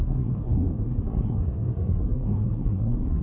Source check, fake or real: fake